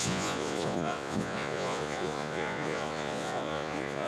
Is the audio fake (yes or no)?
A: yes